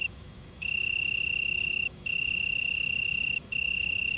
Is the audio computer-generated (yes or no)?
yes